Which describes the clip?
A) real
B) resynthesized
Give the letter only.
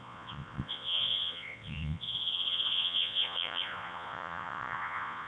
B